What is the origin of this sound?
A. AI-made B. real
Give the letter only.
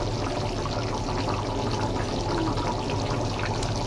B